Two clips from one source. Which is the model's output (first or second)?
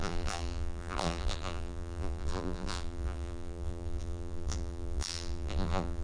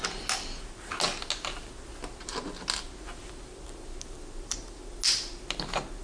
first